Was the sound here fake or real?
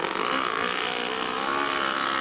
real